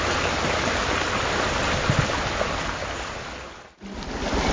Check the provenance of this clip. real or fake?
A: real